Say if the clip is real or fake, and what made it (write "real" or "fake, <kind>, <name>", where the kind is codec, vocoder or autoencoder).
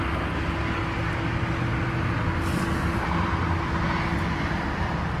real